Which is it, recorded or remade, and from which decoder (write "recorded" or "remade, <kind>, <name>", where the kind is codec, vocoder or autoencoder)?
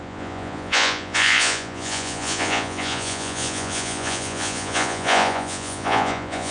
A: remade, vocoder, Vocos